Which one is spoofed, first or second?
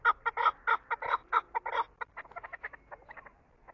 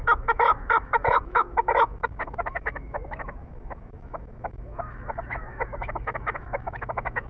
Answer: second